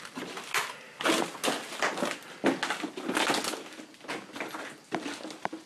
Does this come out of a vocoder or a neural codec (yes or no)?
no